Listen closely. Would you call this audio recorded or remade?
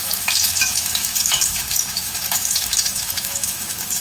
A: remade